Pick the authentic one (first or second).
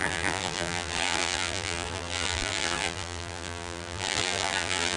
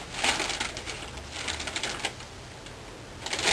second